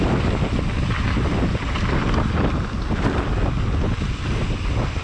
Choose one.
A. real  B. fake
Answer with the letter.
A